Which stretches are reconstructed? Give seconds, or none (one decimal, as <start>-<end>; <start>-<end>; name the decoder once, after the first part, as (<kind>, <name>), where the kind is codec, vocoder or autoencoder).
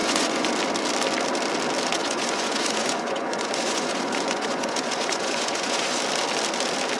0.0-0.5 (vocoder, Vocos); 2.0-6.0